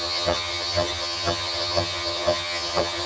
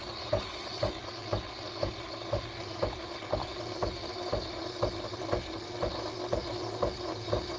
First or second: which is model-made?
first